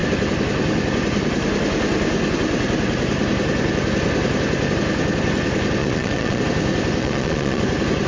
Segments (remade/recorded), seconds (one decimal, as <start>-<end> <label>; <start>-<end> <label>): 0.0-5.8 recorded; 5.8-6.4 remade; 6.4-7.0 recorded; 7.0-7.6 remade; 7.6-8.1 recorded